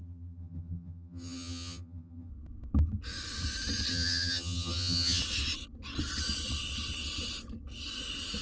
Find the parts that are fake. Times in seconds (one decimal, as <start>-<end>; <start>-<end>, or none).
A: 0.0-2.3; 3.9-5.2